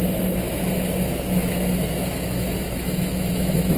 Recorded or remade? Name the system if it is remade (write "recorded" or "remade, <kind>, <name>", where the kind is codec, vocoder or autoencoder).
remade, autoencoder, DAC-VAE